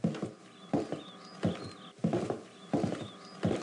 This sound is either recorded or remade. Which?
recorded